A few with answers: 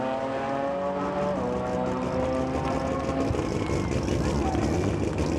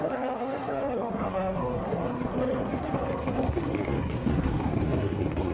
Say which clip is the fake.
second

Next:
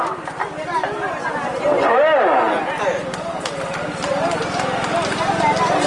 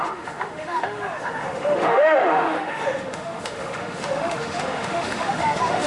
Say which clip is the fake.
second